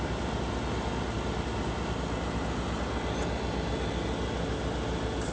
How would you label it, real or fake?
real